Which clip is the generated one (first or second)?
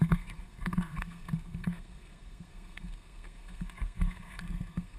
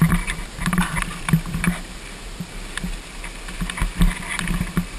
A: first